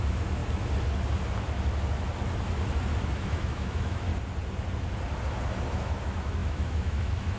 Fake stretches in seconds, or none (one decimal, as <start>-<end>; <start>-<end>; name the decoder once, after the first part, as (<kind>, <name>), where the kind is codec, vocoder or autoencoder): 0.0-0.4 (autoencoder, DAC-VAE); 3.0-4.1; 5.7-7.4